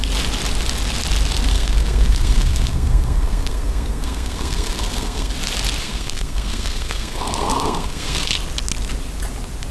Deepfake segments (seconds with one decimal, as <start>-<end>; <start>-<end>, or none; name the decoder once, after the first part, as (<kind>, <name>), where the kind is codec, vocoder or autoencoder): 1.5-5.3 (codec, SNAC); 5.8-8.3